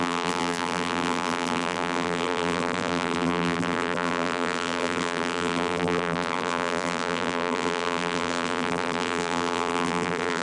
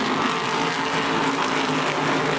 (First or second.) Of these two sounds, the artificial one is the first